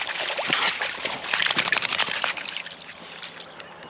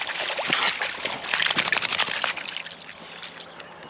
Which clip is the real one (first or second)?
second